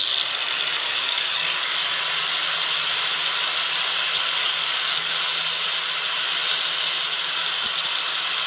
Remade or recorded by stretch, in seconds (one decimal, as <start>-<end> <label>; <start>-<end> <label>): 0.0-0.7 recorded; 0.7-1.7 remade; 1.7-4.4 recorded; 4.4-5.1 remade; 5.1-8.5 recorded